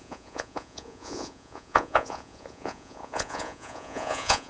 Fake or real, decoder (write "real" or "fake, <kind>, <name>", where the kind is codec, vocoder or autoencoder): fake, vocoder, Vocos